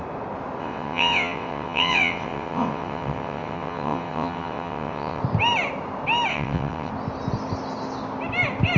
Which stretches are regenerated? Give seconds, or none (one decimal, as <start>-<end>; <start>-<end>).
0.6-5.2; 6.3-6.9

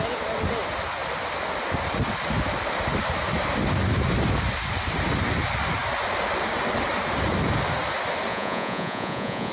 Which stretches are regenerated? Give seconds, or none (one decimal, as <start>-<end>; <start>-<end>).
8.3-9.5

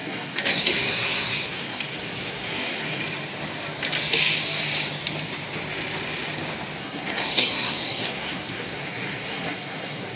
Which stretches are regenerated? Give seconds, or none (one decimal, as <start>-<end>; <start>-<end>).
0.0-3.0; 6.8-10.2

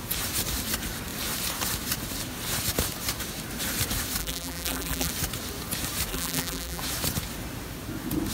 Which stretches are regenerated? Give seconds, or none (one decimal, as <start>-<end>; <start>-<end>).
4.2-5.1; 6.1-6.8

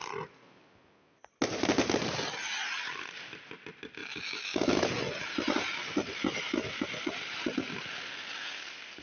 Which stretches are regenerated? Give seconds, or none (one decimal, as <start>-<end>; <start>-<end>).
4.0-4.9

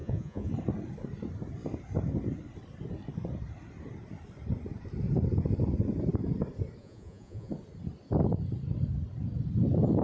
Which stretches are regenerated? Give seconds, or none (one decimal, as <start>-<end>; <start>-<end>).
0.0-0.5; 6.8-7.5

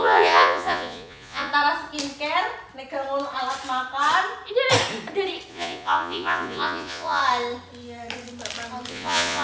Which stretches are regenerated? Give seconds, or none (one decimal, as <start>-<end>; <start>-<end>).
0.0-1.5; 5.5-7.2; 8.9-9.4